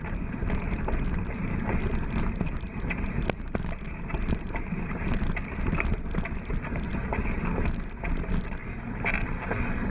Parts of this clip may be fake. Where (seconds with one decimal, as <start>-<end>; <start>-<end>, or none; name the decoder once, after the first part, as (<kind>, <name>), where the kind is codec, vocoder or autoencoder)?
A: none

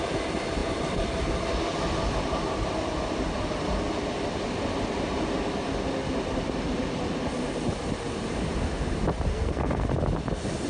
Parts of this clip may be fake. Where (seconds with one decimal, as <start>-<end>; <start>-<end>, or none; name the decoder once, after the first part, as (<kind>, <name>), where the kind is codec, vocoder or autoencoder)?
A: 9.3-9.9 (codec, SNAC)